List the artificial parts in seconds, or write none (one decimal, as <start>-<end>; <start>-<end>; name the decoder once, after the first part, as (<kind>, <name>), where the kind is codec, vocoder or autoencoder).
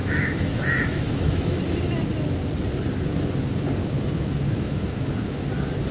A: 0.0-1.8 (autoencoder, DAC-VAE); 3.8-5.5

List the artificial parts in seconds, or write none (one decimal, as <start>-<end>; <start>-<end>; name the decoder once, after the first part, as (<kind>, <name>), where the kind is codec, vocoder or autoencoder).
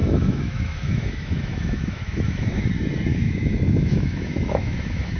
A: 0.0-2.7 (autoencoder, DAC-VAE); 3.1-5.2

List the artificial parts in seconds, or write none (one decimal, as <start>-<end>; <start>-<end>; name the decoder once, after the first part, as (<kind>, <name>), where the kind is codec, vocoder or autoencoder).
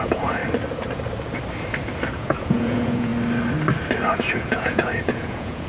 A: 0.0-0.4 (vocoder, Vocos); 2.1-3.1; 4.1-5.7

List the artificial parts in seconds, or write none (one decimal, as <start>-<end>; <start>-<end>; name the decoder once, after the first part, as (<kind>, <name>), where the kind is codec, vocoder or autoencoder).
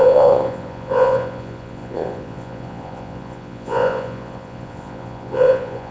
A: 0.0-5.9 (vocoder, Vocos)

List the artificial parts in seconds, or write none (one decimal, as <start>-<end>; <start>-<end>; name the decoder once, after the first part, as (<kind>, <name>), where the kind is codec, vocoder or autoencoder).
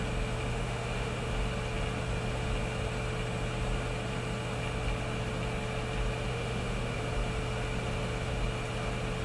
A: 0.5-1.3 (autoencoder, DAC-VAE); 6.3-7.0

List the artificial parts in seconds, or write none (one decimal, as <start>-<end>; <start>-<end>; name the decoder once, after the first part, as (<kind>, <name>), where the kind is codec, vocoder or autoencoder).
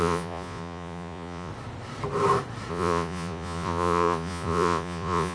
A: 0.0-1.5 (vocoder, Vocos); 2.7-5.3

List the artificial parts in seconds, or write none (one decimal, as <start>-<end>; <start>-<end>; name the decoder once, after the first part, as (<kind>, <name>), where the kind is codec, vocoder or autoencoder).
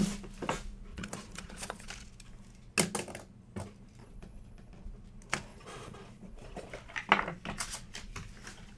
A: 0.9-1.9 (vocoder, Vocos); 4.0-4.7; 5.5-6.7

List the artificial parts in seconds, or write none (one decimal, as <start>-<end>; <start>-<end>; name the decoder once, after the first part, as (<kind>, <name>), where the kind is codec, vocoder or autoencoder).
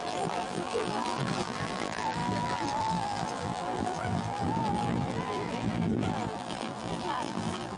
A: 0.0-7.8 (vocoder, BigVGAN v2)